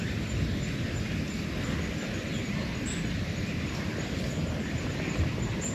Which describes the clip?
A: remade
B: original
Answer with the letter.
B